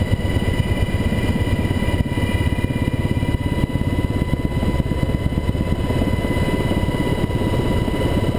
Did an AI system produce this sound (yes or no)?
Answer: no